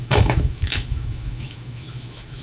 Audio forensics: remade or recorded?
remade